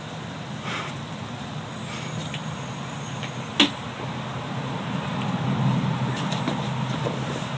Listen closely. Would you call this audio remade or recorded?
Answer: recorded